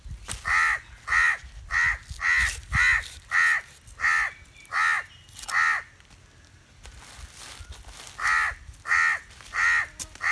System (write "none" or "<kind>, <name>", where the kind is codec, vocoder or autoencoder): none